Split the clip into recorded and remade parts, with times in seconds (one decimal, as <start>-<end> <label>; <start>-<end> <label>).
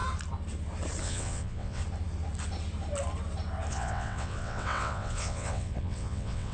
0.0-1.0 recorded; 1.0-1.8 remade; 1.8-3.7 recorded; 3.7-6.5 remade